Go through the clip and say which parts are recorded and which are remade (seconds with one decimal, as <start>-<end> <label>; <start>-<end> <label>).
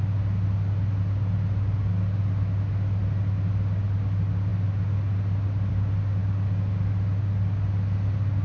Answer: 0.0-8.4 recorded